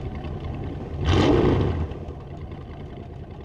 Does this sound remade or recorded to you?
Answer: recorded